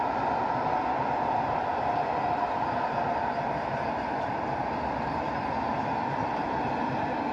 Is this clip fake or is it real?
real